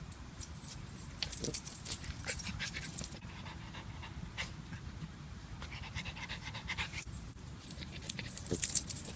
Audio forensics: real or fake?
fake